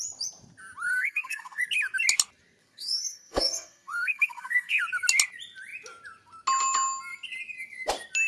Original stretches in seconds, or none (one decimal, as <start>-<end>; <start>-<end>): 0.0-0.9; 1.6-2.6; 4.8-8.3